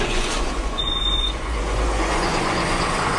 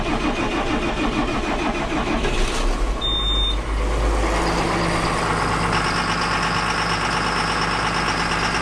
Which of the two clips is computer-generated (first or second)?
first